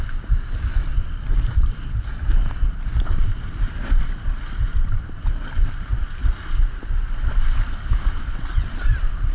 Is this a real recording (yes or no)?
yes